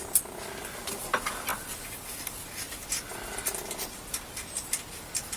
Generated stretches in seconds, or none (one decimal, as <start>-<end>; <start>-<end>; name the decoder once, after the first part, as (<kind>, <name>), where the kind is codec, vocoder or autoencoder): none